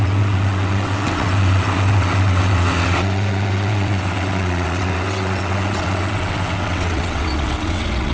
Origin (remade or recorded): remade